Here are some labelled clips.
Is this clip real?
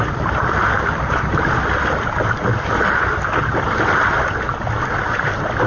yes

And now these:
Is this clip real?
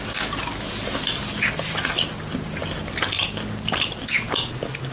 yes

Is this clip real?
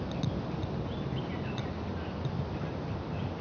yes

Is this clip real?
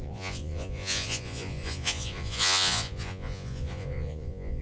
no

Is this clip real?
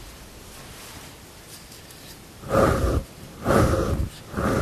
yes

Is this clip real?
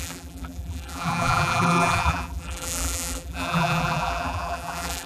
no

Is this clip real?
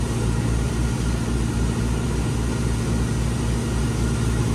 yes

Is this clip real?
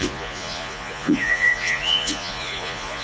no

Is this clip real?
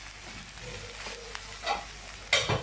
yes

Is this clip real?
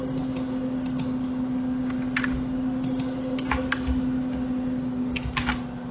yes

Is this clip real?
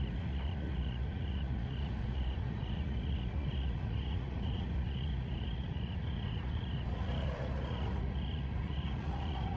no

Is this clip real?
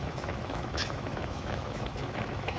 no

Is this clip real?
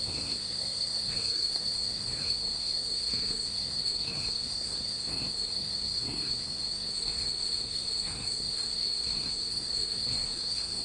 no